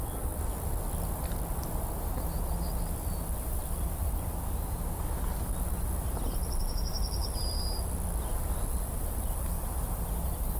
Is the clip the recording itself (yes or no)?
yes